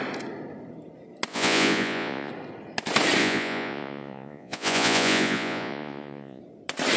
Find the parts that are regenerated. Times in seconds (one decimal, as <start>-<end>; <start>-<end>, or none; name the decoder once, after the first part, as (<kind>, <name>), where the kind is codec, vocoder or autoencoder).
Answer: 1.3-2.3 (vocoder, Vocos); 3.2-6.4

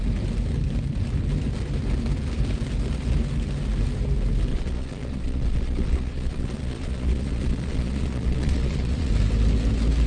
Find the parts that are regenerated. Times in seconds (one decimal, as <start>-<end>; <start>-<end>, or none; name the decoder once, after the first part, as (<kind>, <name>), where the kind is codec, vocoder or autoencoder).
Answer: 4.5-9.1 (vocoder, Vocos)

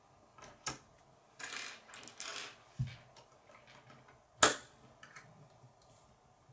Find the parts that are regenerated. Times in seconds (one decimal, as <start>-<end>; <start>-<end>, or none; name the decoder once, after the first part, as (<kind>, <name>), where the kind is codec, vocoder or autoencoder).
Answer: none

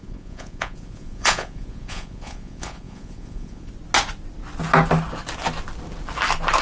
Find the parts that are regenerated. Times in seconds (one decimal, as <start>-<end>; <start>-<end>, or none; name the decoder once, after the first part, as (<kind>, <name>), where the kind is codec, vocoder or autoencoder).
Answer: 0.0-3.7 (vocoder, Vocos)

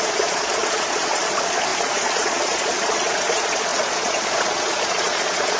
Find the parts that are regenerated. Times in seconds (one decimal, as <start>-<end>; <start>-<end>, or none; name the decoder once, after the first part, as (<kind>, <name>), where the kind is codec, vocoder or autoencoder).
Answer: 0.0-5.6 (vocoder, Vocos)

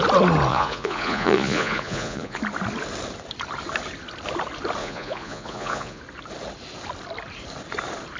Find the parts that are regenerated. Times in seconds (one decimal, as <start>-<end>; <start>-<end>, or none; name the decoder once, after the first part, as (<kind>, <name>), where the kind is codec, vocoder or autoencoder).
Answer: 0.5-2.4 (vocoder, Vocos); 4.8-6.0